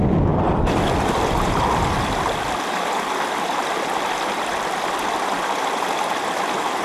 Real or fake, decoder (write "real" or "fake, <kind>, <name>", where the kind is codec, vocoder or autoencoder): real